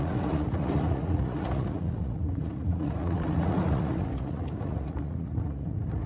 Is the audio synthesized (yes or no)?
yes